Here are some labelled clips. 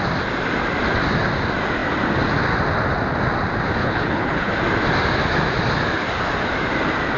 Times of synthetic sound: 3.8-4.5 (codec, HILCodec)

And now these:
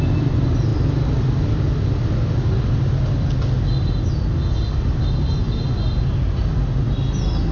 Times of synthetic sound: none

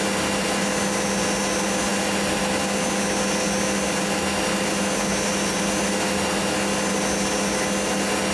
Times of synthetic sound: none

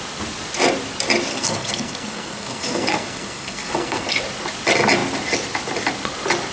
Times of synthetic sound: 1.3-4.2 (codec, SNAC)

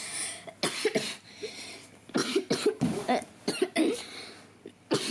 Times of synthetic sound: 0.9-1.5 (vocoder, BigVGAN v2); 2.2-3.8

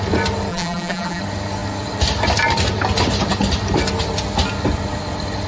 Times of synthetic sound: 0.5-1.2 (vocoder, BigVGAN v2)

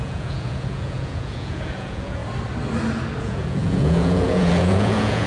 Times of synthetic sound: 0.0-2.2 (vocoder, Vocos); 3.2-5.3